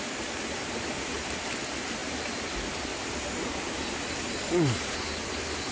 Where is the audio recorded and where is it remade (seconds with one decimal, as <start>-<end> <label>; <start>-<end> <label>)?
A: 0.0-5.7 recorded